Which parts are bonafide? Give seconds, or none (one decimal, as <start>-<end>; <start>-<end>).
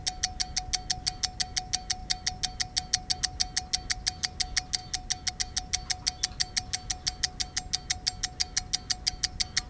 0.0-9.7